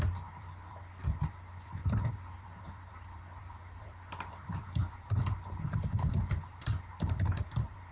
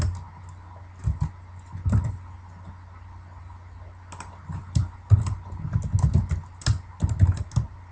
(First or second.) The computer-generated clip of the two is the first